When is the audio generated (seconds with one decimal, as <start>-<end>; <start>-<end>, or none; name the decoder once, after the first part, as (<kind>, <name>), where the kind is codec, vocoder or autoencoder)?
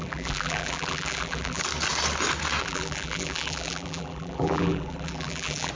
0.0-1.6 (vocoder, BigVGAN v2); 2.6-5.7